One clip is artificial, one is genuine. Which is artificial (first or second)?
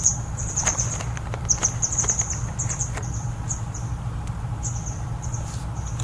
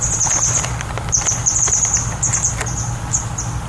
first